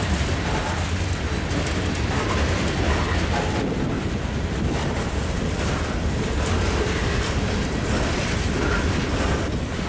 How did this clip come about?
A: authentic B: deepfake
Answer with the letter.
A